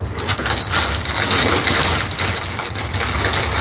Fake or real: real